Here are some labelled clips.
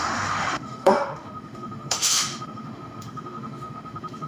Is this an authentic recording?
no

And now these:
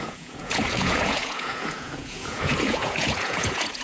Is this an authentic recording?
no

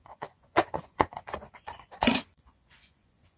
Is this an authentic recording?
no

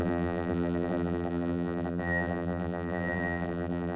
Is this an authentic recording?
no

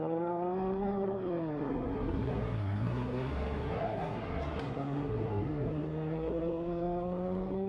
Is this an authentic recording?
no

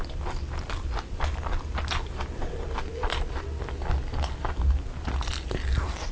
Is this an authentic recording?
yes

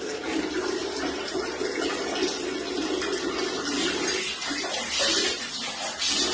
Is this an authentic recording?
yes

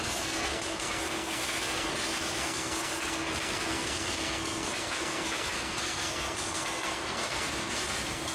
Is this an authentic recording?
no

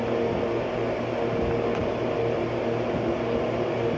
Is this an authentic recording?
yes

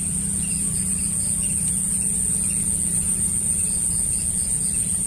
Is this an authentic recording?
yes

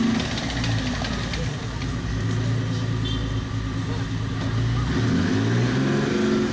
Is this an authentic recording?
yes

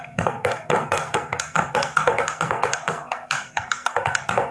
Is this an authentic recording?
no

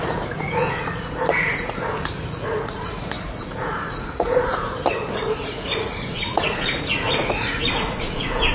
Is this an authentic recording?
no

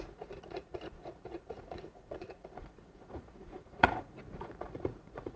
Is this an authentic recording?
no